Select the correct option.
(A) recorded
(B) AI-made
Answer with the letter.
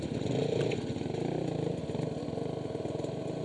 A